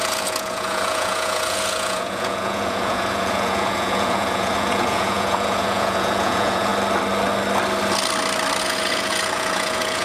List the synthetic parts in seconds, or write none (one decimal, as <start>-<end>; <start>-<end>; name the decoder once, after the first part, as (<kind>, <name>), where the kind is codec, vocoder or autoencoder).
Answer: 0.0-6.7 (vocoder, Vocos); 8.6-10.0